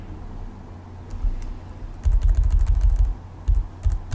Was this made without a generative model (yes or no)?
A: yes